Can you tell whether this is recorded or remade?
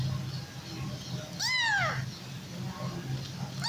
recorded